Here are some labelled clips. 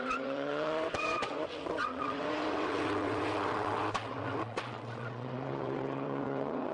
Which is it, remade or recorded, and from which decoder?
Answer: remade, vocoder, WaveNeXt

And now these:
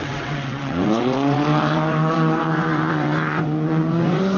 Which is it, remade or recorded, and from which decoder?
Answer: remade, vocoder, WaveNeXt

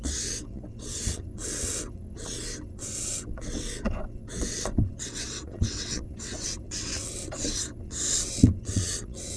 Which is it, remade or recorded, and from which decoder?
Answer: remade, vocoder, WaveNeXt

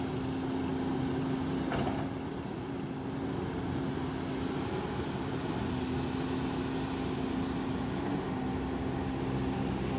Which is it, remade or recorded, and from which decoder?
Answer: recorded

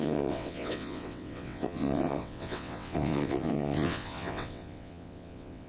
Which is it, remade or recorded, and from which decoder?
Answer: remade, vocoder, WaveNeXt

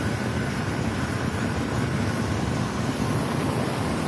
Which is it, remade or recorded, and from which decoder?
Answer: recorded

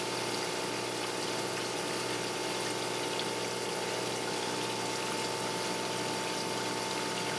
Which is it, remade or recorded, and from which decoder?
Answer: recorded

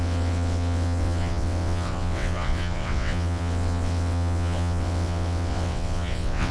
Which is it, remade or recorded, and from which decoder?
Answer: remade, vocoder, WaveNeXt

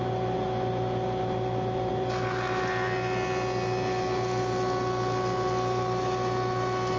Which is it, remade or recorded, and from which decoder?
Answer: recorded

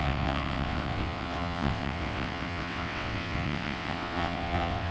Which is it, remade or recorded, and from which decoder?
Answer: remade, vocoder, WaveNeXt